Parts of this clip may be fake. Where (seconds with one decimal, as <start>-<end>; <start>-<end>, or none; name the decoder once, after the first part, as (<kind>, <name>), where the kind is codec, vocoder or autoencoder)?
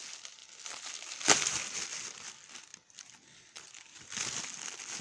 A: none